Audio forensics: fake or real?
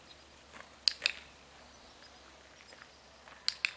real